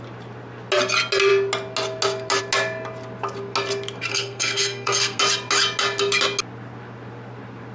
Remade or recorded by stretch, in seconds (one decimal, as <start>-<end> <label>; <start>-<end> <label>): 0.0-4.1 recorded; 4.1-5.2 remade; 5.2-7.7 recorded